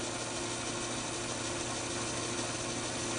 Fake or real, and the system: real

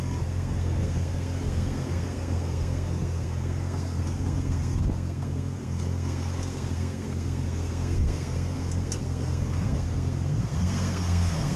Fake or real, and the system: fake, codec, SNAC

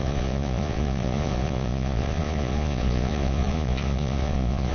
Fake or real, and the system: fake, vocoder, Vocos